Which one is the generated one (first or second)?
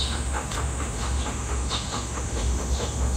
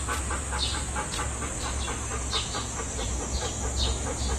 first